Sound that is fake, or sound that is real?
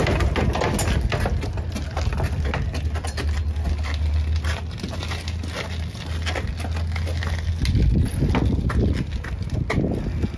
real